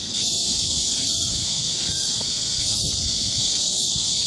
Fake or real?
fake